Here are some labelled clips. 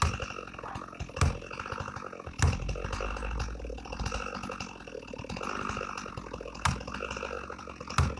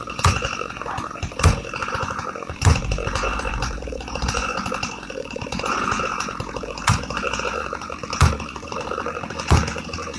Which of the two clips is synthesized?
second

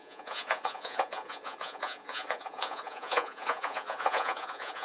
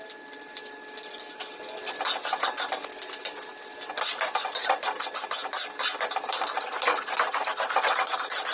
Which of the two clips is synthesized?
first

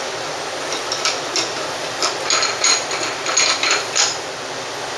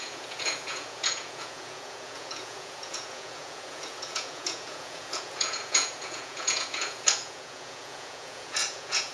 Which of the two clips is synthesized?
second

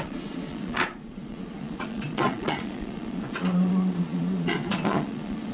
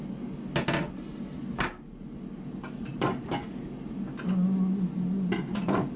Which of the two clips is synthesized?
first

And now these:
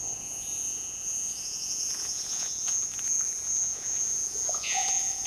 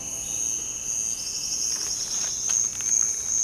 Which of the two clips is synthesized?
first